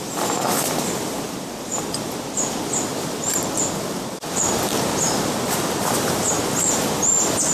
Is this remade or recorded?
remade